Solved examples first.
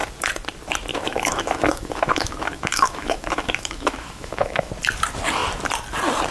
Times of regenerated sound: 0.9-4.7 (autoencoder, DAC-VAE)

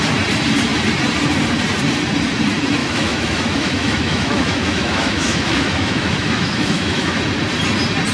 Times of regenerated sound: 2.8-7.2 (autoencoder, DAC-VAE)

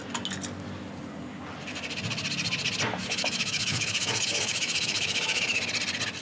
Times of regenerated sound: 3.0-5.6 (autoencoder, DAC-VAE)

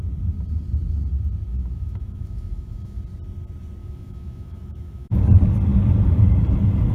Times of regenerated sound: 1.5-3.0 (autoencoder, DAC-VAE); 3.8-5.2